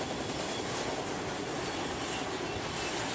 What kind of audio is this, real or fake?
real